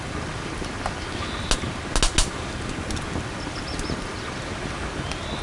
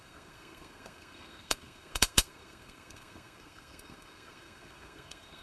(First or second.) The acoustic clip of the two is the first